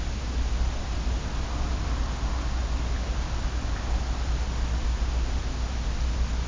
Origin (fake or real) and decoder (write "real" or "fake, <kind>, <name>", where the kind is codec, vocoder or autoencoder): real